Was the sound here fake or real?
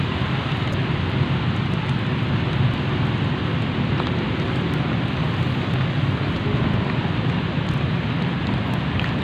real